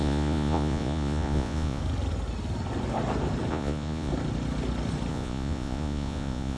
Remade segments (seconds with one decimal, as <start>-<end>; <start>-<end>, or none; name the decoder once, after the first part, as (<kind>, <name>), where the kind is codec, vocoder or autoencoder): 0.0-1.8 (vocoder, Vocos); 3.5-4.1; 5.1-6.6

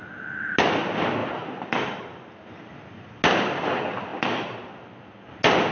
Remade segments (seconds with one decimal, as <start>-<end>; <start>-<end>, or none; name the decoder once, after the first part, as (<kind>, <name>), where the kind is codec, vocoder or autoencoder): 1.2-2.5 (vocoder, BigVGAN v2); 4.1-4.7

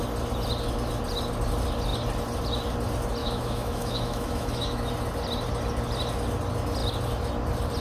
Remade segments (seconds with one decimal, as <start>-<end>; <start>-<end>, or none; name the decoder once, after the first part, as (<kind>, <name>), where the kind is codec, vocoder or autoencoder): 3.2-4.9 (autoencoder, DAC-VAE)

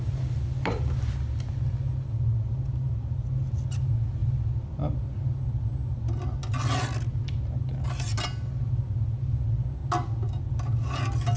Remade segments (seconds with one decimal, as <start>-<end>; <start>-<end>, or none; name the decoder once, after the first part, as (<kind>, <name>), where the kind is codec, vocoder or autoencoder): none

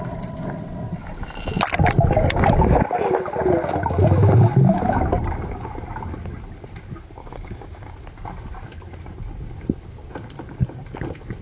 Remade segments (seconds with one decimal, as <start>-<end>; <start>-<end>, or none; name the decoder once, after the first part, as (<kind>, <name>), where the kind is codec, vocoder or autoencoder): 7.2-7.9 (codec, DAC)

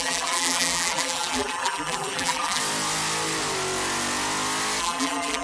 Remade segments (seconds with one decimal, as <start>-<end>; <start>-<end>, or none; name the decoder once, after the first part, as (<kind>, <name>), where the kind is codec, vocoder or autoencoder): 0.0-2.6 (vocoder, BigVGAN v2); 4.8-5.4

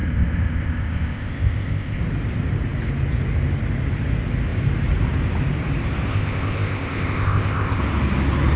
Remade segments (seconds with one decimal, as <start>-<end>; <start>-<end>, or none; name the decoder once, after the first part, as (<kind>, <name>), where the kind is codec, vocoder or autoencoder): 0.0-2.0 (codec, ZipCodec); 6.1-7.8